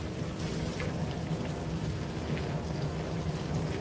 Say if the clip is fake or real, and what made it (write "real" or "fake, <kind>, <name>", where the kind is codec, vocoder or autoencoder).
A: real